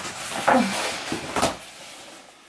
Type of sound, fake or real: real